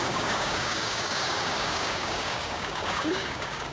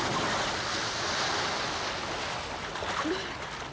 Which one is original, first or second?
second